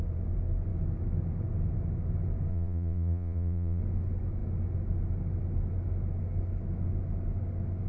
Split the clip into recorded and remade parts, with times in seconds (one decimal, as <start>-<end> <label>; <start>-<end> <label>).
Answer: 0.0-2.5 recorded; 2.5-3.8 remade; 3.8-7.9 recorded